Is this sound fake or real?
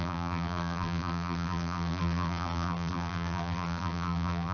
fake